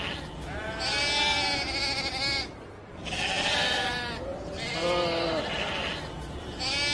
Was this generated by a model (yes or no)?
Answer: no